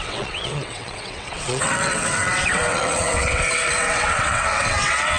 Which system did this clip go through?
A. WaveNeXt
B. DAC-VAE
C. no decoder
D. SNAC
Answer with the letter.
A